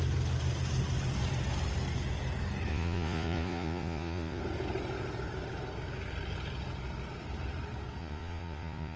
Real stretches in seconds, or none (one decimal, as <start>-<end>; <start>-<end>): 0.0-2.7; 4.4-8.0